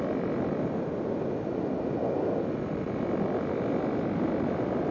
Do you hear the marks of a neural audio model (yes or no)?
no